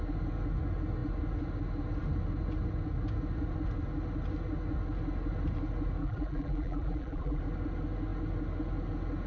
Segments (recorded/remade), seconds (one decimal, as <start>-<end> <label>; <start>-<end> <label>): 0.0-6.0 recorded; 6.0-7.4 remade; 7.4-9.3 recorded